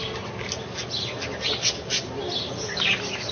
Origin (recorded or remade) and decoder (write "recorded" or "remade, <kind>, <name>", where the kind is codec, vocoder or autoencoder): recorded